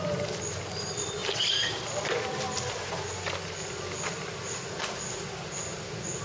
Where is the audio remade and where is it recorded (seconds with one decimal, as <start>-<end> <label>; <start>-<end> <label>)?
0.0-6.2 recorded